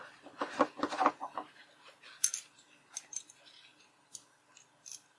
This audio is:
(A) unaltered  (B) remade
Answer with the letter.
A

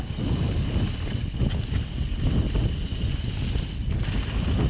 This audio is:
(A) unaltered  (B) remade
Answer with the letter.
A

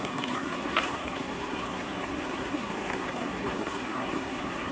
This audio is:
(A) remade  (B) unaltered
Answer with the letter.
A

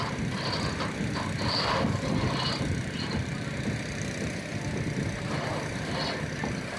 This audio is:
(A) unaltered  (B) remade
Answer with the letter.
A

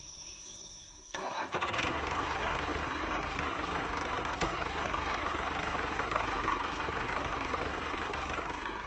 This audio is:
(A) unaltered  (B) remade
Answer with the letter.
B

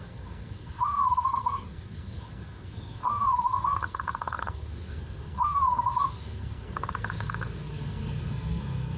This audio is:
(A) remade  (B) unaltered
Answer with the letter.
A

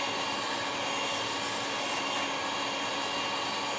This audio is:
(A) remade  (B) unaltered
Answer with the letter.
B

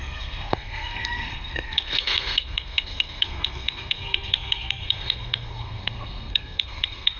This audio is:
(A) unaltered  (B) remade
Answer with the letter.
B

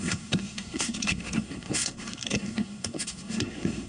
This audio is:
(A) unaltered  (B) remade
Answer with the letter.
B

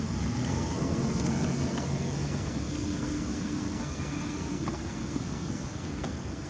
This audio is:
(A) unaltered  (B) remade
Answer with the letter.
B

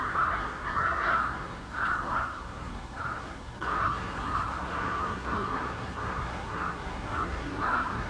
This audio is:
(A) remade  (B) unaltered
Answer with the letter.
A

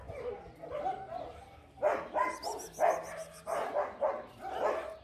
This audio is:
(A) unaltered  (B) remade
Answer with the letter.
A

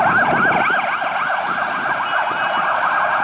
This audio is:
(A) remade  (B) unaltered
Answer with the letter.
B